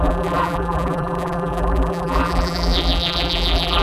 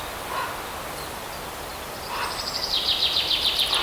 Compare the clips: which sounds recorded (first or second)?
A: second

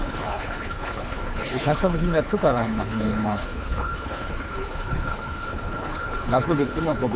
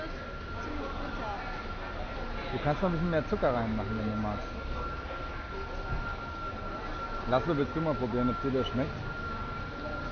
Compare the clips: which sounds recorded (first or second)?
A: second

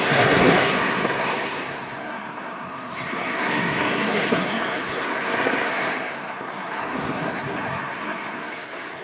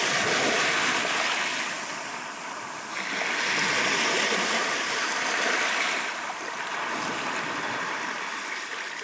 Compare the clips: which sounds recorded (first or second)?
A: second